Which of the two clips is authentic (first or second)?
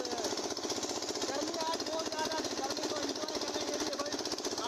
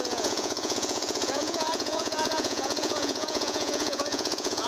first